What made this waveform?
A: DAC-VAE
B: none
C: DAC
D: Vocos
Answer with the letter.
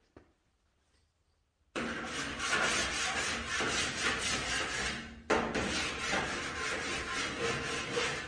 B